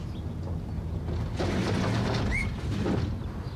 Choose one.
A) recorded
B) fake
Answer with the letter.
A